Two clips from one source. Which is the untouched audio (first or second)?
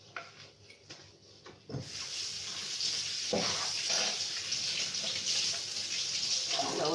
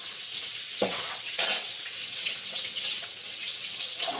first